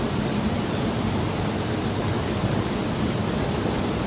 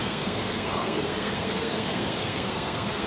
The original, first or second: first